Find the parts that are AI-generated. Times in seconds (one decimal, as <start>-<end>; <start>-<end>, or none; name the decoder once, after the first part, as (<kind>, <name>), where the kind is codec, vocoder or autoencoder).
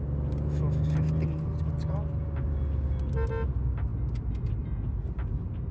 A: none